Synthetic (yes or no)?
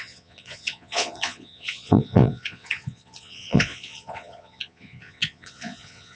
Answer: yes